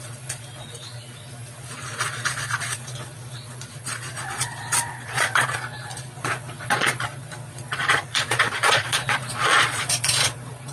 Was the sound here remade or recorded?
remade